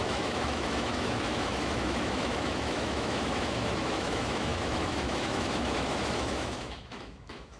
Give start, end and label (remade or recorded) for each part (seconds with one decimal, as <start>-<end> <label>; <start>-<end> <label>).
0.0-7.6 remade